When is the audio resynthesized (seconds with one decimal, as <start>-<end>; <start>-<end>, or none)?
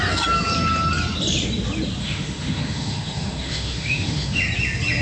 2.0-4.4